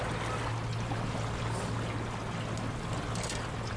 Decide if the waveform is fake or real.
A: real